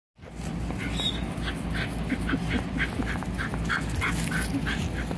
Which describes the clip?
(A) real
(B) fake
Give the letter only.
A